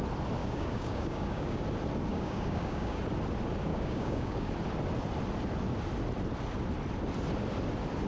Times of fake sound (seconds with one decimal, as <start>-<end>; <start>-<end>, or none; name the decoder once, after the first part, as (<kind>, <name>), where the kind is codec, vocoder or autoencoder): 0.4-1.6 (codec, DAC); 2.1-3.0; 3.7-4.5